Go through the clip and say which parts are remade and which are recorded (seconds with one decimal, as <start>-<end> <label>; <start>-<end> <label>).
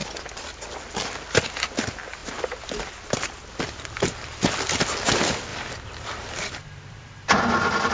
0.0-2.2 recorded; 2.2-3.3 remade; 3.3-5.5 recorded; 5.5-7.4 remade; 7.4-7.9 recorded